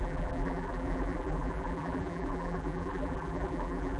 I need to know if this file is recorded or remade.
remade